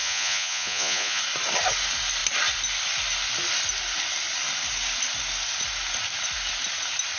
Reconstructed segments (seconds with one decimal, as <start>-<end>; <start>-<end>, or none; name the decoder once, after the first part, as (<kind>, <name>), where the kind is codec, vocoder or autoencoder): 0.0-1.2 (vocoder, Vocos)